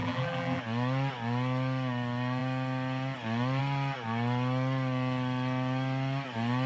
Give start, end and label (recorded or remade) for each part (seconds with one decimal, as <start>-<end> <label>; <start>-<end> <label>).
0.0-0.6 remade; 0.6-6.7 recorded